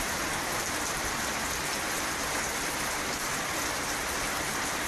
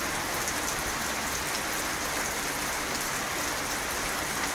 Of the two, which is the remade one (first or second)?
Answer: first